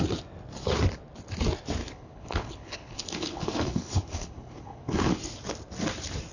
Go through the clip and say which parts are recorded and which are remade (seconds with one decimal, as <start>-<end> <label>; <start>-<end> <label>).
0.0-1.8 recorded; 1.8-5.2 remade; 5.2-6.3 recorded